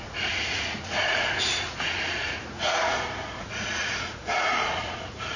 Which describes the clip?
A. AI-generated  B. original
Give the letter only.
A